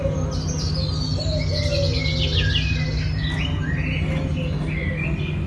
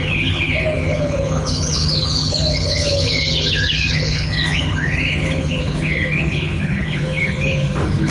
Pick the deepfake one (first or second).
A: second